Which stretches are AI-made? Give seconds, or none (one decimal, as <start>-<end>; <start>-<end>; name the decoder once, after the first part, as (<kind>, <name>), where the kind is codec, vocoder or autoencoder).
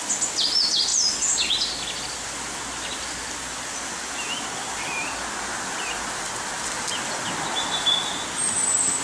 none